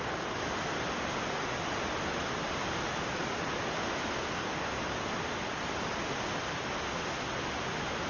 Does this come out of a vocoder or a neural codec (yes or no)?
no